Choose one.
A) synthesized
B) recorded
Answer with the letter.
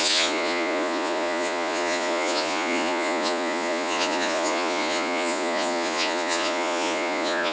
A